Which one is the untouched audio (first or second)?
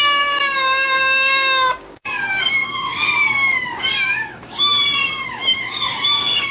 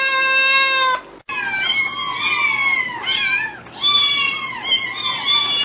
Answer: second